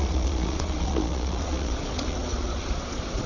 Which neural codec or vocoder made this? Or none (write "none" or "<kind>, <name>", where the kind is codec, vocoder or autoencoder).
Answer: vocoder, Vocos